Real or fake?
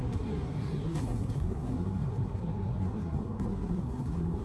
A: fake